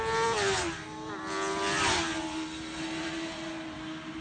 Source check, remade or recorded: recorded